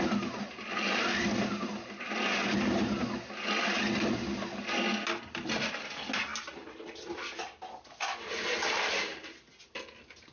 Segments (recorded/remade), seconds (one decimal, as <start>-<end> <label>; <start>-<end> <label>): 0.0-10.3 recorded